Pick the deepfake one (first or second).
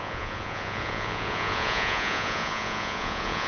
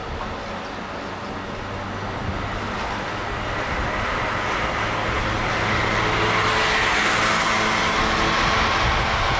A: first